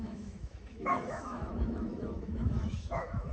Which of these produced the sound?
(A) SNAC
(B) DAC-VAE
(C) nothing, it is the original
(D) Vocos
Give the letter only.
B